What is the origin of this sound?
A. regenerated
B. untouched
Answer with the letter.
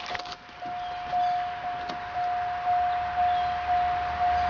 B